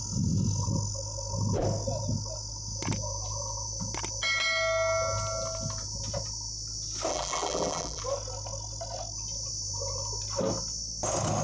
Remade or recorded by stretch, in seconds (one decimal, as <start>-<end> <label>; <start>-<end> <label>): 0.0-7.1 recorded; 7.1-8.0 remade; 8.0-11.4 recorded